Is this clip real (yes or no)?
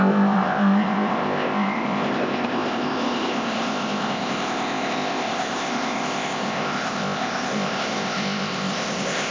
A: no